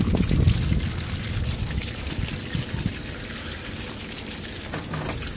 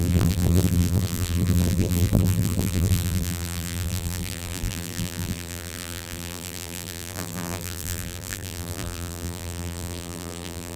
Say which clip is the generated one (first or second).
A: second